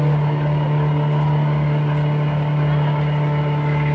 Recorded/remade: recorded